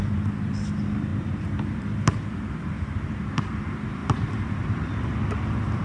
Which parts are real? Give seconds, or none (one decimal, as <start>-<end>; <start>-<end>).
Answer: 0.0-4.0; 4.6-5.8